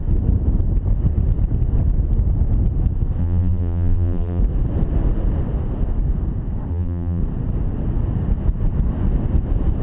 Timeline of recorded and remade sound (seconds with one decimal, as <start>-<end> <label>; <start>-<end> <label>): 0.0-3.2 recorded; 3.2-4.4 remade; 4.4-6.7 recorded; 6.7-7.2 remade; 7.2-9.8 recorded